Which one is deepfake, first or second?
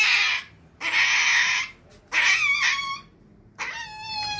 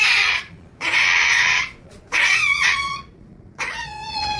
second